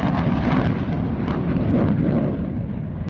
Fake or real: fake